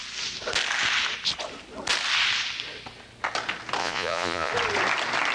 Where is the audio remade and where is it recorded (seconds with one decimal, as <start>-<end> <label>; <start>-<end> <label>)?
0.0-3.8 recorded; 3.8-4.5 remade; 4.5-5.3 recorded